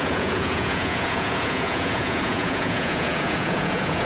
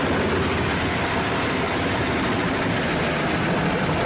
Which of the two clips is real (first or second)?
second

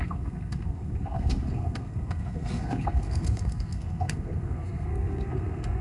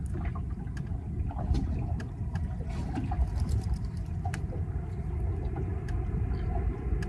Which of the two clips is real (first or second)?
second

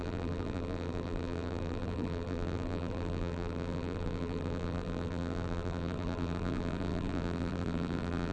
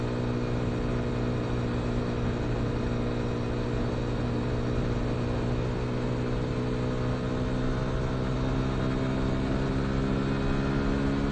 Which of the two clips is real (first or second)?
second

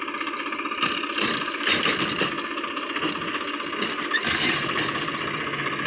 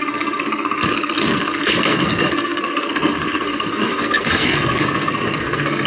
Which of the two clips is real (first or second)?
first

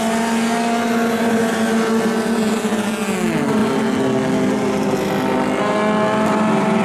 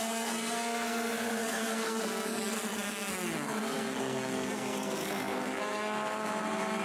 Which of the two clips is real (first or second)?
first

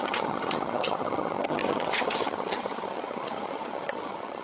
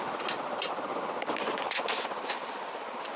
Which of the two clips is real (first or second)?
second